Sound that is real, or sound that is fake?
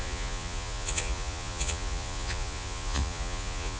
fake